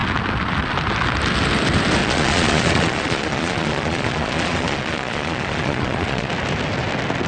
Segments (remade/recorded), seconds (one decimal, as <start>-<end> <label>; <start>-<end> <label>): 0.0-2.0 recorded; 2.0-6.3 remade; 6.3-7.3 recorded